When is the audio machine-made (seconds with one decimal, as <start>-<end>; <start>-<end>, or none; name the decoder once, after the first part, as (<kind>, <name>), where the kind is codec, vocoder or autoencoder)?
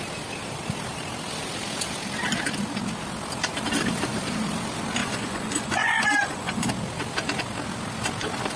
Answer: 5.0-6.7 (vocoder, Vocos)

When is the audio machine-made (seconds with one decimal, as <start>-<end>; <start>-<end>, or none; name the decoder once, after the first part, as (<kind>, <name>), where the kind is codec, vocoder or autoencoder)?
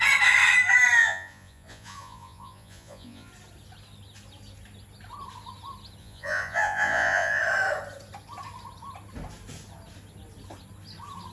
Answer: 1.0-3.3 (vocoder, Vocos); 6.0-7.4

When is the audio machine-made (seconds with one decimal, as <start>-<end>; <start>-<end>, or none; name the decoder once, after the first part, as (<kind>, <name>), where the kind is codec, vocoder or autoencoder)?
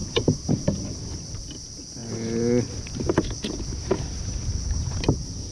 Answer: none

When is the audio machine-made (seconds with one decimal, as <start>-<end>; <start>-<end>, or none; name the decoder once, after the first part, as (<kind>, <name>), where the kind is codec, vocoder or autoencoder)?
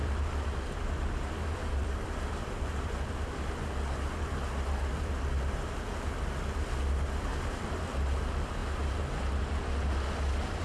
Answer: 0.0-3.3 (vocoder, BigVGAN v2); 7.3-7.9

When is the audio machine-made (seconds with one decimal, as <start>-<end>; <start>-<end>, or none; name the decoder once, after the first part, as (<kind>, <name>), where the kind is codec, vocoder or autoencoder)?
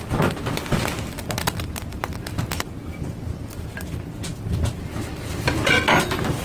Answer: 4.3-5.7 (vocoder, BigVGAN v2)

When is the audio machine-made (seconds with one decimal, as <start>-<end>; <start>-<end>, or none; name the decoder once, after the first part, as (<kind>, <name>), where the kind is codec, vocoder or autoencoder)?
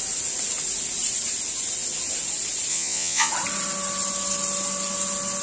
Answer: 2.7-3.3 (vocoder, Vocos)